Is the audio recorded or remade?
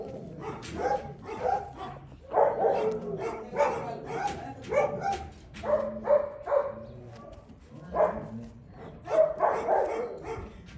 recorded